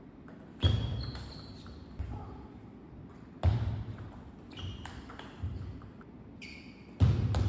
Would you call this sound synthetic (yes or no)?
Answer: no